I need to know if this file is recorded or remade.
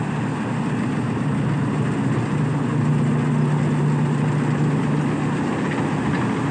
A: recorded